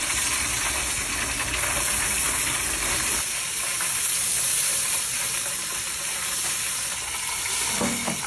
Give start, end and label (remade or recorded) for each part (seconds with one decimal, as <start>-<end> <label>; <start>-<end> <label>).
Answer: 0.0-4.5 recorded; 4.5-7.5 remade; 7.5-8.3 recorded

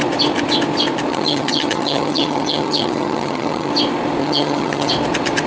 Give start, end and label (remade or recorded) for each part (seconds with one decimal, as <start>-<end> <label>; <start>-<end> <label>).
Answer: 0.0-1.1 recorded; 1.1-3.7 remade; 3.7-4.2 recorded; 4.2-4.9 remade; 4.9-5.5 recorded

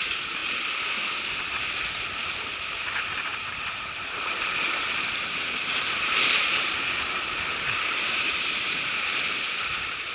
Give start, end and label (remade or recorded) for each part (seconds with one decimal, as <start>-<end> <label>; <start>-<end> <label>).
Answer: 0.0-0.4 remade; 0.4-2.9 recorded; 2.9-10.1 remade

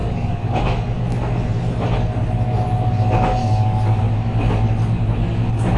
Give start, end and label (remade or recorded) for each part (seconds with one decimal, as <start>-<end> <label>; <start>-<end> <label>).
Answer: 0.0-1.0 remade; 1.0-3.4 recorded; 3.4-4.0 remade; 4.0-5.8 recorded

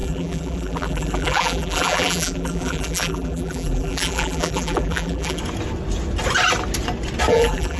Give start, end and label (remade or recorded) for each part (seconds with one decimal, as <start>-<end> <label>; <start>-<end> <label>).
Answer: 0.0-5.4 remade; 5.4-7.3 recorded; 7.3-7.8 remade